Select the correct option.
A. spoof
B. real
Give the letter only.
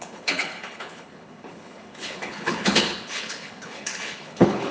A